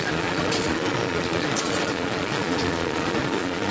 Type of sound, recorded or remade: remade